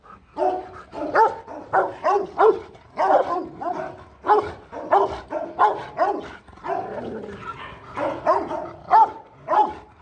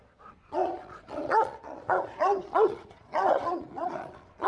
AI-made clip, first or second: second